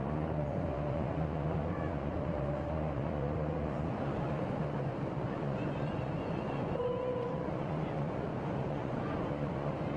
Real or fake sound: fake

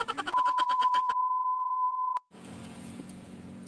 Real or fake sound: fake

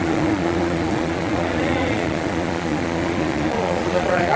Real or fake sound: fake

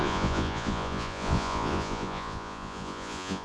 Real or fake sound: fake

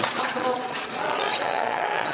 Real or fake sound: fake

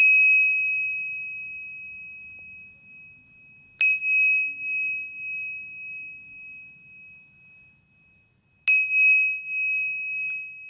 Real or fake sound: real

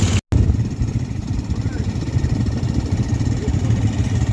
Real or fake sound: real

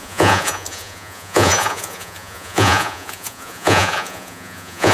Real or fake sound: fake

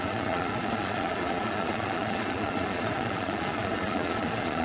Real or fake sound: fake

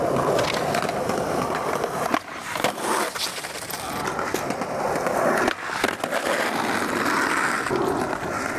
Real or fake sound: real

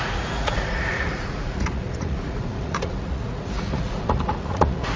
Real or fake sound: fake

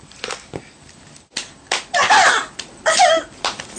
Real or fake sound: real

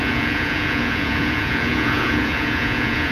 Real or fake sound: fake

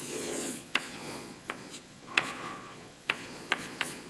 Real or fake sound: fake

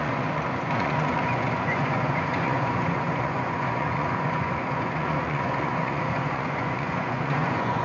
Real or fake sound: fake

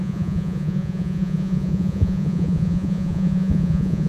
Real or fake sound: fake